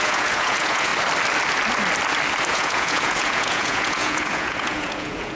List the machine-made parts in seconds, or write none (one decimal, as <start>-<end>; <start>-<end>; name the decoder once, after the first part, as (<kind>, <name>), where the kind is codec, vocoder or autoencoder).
0.0-0.9 (vocoder, Vocos); 2.5-5.3